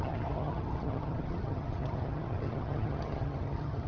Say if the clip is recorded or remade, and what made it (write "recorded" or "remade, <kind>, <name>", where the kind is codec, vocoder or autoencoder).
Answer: remade, vocoder, HiFi-GAN